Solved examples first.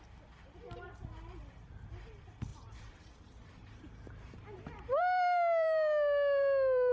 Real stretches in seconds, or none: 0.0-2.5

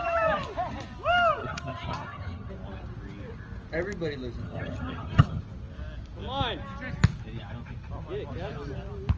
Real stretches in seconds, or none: 0.0-1.4; 2.5-4.4; 5.4-9.2

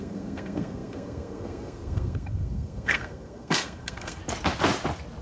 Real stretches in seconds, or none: 4.2-5.2

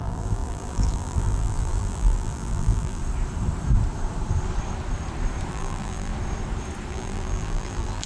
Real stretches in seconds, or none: 3.0-5.5; 6.1-6.9

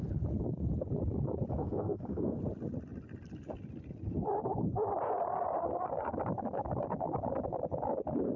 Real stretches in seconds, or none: 0.0-1.5; 2.4-8.4

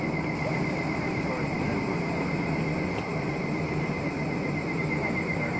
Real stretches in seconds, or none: 0.0-5.6